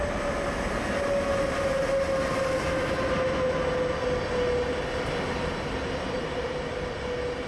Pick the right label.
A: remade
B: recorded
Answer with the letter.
B